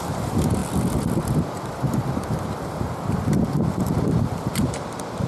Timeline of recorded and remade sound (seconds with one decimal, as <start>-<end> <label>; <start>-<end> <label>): 0.0-5.3 remade